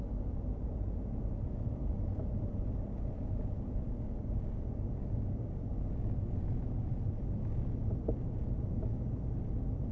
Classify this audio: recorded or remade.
recorded